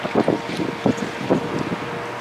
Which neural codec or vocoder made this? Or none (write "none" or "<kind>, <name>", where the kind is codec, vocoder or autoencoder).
none